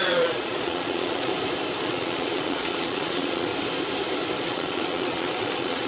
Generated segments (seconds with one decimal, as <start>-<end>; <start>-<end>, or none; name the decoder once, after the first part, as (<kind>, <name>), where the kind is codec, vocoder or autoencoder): 0.0-1.3 (vocoder, Vocos); 1.8-3.5; 4.4-5.9